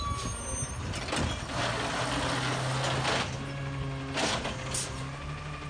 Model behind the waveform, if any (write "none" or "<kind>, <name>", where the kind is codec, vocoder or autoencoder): none